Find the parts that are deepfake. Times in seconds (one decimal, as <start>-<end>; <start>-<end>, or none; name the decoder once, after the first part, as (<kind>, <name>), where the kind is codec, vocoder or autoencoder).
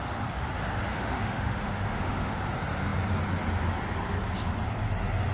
0.9-2.4 (autoencoder, DAC-VAE)